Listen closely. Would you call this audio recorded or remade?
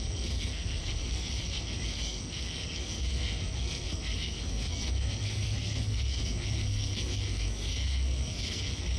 remade